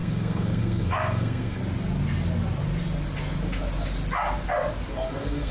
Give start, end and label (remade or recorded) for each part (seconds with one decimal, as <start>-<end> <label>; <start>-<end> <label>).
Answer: 0.0-1.6 remade; 1.6-4.9 recorded; 4.9-5.5 remade

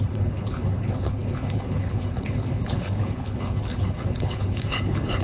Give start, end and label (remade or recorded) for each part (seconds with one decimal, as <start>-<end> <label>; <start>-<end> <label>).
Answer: 0.0-5.2 remade